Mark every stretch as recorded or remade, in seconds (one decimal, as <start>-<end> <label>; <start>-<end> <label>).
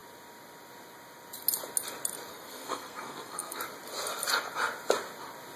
0.0-2.3 recorded; 2.3-3.6 remade; 3.6-5.6 recorded